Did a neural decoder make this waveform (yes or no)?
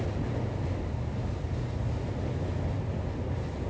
no